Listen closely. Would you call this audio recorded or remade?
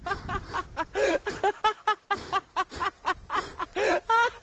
recorded